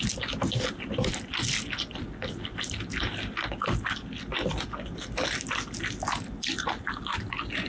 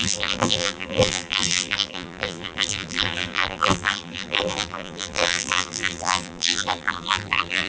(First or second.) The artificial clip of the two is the second